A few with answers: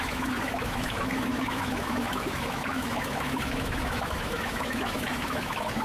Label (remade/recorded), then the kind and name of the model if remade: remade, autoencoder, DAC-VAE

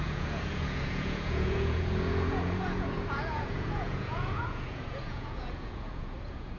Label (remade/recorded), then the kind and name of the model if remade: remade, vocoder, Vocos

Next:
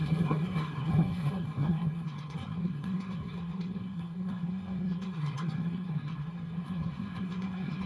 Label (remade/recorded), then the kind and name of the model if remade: remade, codec, SNAC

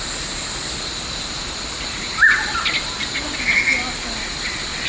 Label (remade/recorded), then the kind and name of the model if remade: recorded